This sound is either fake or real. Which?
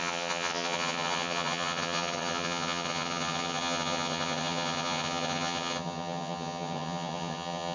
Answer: fake